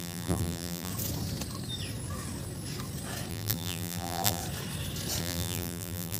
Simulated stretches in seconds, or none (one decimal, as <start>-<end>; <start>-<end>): 0.0-0.9; 3.3-4.4; 5.2-6.2